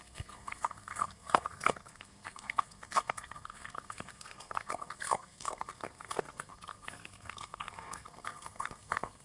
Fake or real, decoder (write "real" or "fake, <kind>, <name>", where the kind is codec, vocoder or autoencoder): fake, codec, SNAC